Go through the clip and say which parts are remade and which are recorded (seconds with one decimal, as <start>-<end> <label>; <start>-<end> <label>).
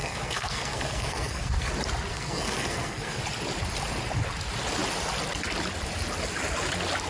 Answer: 0.0-1.7 remade; 1.7-2.1 recorded; 2.1-3.2 remade; 3.2-7.1 recorded